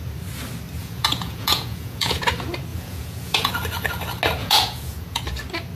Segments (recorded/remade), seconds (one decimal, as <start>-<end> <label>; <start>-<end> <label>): 0.0-0.8 recorded; 0.8-2.2 remade; 2.2-2.7 recorded; 2.7-3.5 remade; 3.5-4.4 recorded; 4.4-5.2 remade; 5.2-5.8 recorded